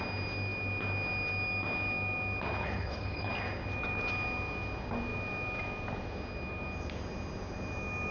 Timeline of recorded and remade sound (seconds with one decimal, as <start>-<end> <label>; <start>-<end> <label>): 0.0-2.6 recorded; 2.6-3.3 remade; 3.3-8.1 recorded